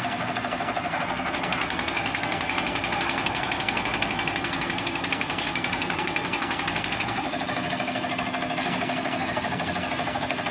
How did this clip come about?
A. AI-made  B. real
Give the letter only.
A